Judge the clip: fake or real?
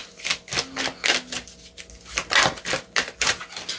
real